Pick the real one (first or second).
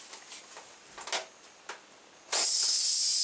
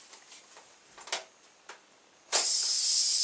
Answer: first